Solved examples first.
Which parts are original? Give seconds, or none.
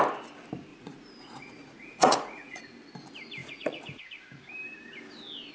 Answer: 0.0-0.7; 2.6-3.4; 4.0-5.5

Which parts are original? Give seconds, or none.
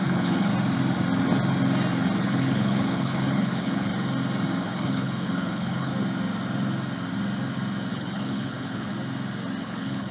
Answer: 0.5-2.2; 3.9-4.6; 5.9-7.9; 8.9-9.6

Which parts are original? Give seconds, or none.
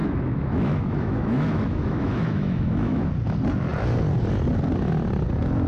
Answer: 3.1-5.7